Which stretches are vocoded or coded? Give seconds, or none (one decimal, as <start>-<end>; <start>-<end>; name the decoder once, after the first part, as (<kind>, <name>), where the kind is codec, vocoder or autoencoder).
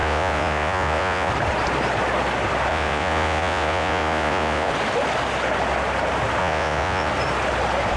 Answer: 0.0-1.3 (vocoder, Vocos); 2.7-4.7; 6.4-7.1